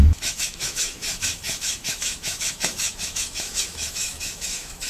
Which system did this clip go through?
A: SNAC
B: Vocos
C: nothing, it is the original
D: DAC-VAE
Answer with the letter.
D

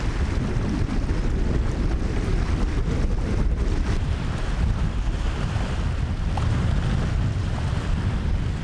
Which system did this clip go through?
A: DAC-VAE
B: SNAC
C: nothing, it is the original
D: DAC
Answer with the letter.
C